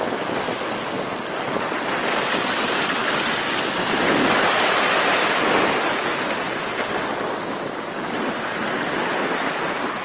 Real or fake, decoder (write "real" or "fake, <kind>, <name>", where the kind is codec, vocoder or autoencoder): real